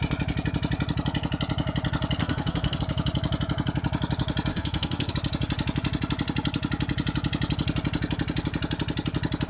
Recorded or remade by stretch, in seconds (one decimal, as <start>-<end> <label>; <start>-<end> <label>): 0.0-2.2 recorded; 2.2-2.8 remade; 2.8-4.5 recorded; 4.5-5.1 remade; 5.1-9.5 recorded